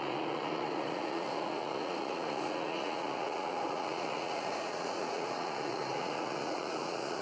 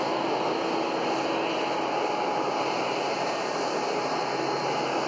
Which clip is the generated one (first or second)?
first